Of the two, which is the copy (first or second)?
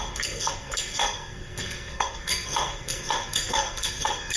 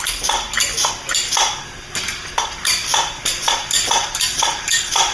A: first